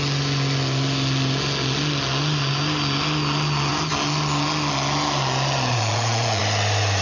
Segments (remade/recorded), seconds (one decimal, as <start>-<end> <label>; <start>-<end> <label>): 0.0-5.7 recorded; 5.7-6.4 remade; 6.4-7.0 recorded

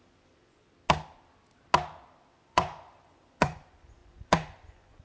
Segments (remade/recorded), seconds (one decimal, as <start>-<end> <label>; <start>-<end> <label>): 0.0-0.7 remade; 0.7-2.3 recorded; 2.3-5.0 remade